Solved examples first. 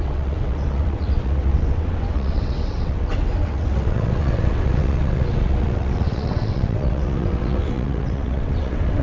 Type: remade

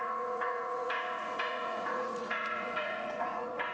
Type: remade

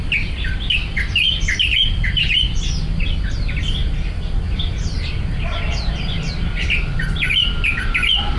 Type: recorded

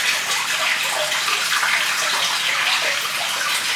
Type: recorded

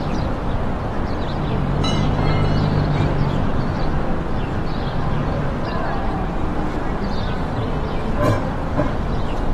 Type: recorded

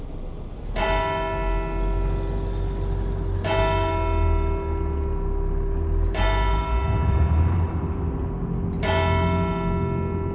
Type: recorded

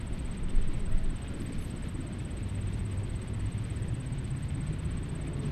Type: recorded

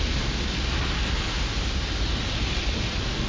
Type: recorded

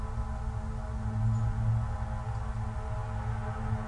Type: recorded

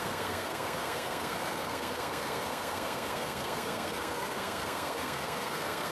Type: remade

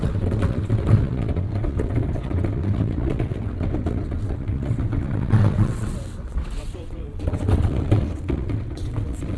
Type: remade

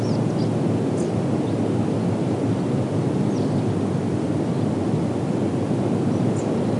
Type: recorded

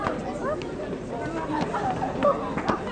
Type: recorded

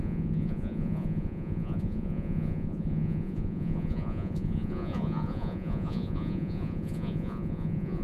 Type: remade